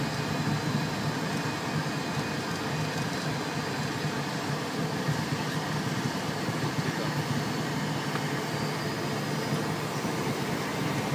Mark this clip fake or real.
real